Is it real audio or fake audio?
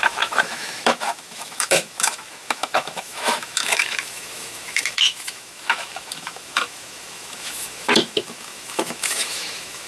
fake